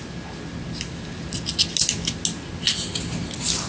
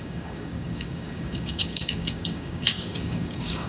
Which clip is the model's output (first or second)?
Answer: second